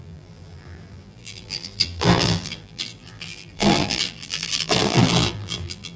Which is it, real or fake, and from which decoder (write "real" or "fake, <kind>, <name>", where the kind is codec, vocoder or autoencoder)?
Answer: fake, vocoder, BigVGAN v2